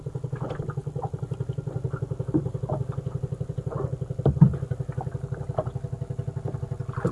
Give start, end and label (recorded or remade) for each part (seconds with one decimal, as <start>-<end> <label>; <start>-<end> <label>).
0.0-7.1 recorded